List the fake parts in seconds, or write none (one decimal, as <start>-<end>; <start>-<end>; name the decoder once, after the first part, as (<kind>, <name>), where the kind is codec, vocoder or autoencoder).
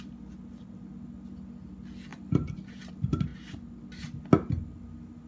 2.1-2.9 (vocoder, BigVGAN v2)